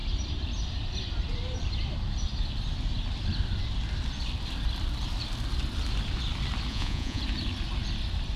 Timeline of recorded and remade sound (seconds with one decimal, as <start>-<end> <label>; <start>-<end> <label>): 0.0-6.7 recorded; 6.7-7.2 remade; 7.2-8.4 recorded